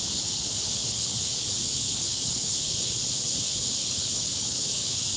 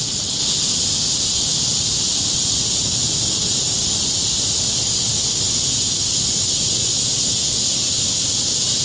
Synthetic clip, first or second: first